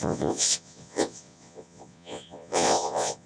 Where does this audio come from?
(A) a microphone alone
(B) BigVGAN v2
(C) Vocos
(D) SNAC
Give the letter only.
C